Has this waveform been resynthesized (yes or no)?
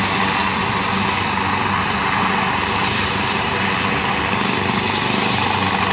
no